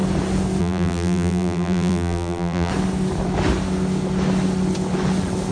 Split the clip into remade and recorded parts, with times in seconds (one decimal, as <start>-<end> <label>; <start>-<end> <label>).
0.0-0.6 recorded; 0.6-2.7 remade; 2.7-5.5 recorded